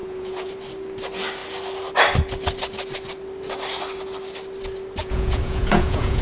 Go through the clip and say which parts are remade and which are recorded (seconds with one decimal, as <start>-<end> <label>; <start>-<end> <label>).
0.0-0.5 remade; 0.5-5.0 recorded; 5.0-6.2 remade